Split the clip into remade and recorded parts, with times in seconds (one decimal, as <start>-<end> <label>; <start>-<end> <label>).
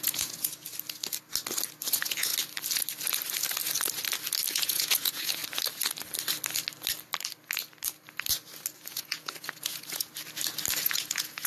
0.0-0.5 remade; 0.5-1.9 recorded; 1.9-2.3 remade; 2.3-4.5 recorded; 4.5-5.4 remade; 5.4-8.9 recorded; 8.9-10.1 remade; 10.1-10.8 recorded; 10.8-11.5 remade